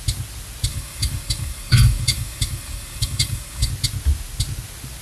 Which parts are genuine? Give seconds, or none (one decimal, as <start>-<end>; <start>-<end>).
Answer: 0.0-0.7; 3.7-5.0